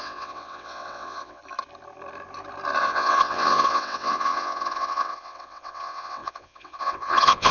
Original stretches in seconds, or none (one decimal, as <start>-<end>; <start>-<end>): 1.4-2.8